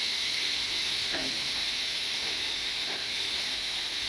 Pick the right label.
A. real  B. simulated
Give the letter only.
B